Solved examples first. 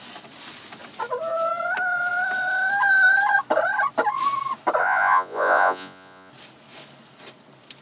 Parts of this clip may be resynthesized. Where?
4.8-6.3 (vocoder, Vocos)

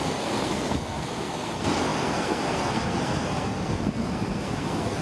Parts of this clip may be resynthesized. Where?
0.0-5.0 (codec, SNAC)

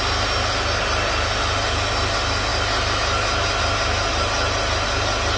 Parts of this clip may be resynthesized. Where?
none

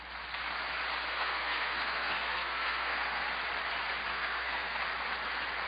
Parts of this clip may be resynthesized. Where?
1.1-3.2 (codec, SNAC); 4.1-4.8